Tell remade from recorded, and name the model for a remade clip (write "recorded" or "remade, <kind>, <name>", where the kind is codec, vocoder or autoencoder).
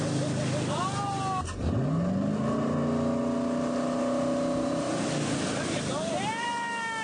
recorded